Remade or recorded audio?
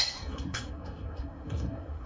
remade